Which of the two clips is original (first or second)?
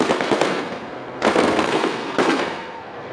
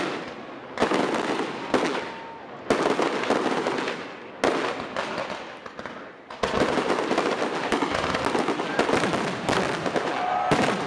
second